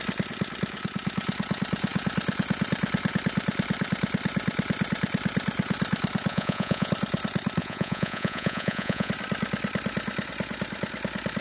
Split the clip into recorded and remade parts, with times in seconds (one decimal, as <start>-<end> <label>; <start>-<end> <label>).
0.0-6.3 recorded; 6.3-6.9 remade; 6.9-7.6 recorded; 7.6-9.1 remade; 9.1-11.4 recorded